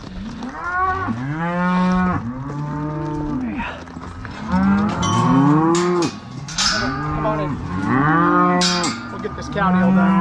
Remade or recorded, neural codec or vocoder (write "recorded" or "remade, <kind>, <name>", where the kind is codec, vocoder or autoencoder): recorded